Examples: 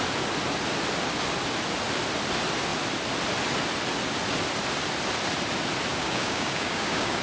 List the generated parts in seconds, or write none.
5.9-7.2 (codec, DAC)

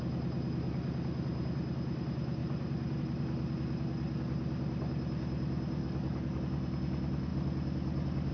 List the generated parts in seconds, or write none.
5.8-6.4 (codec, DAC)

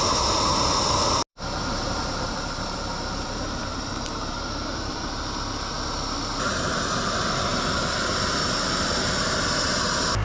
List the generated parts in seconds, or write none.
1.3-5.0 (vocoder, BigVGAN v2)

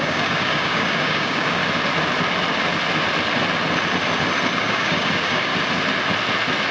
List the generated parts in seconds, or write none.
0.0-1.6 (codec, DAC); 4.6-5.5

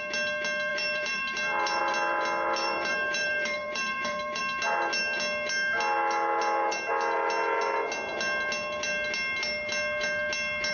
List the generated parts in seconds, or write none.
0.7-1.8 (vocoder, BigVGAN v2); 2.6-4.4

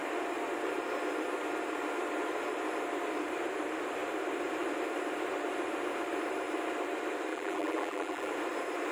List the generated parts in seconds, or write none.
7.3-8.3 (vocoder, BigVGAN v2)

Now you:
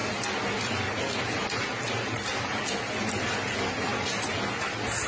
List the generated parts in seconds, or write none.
none

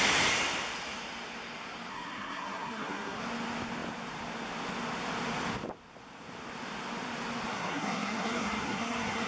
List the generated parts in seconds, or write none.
1.9-3.2 (codec, SNAC); 7.5-9.3